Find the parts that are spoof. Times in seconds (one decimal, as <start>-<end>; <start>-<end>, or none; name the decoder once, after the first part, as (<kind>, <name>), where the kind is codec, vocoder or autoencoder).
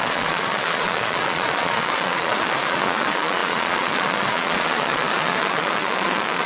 0.0-6.5 (vocoder, Vocos)